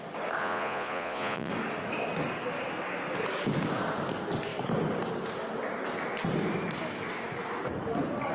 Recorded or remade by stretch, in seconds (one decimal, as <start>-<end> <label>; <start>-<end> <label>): 0.0-0.4 recorded; 0.4-1.5 remade; 1.5-8.3 recorded